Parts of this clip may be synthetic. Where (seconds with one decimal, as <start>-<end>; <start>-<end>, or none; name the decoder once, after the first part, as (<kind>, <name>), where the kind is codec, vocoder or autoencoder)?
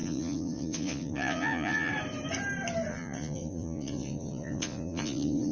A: 0.0-1.9 (vocoder, Vocos); 2.9-5.5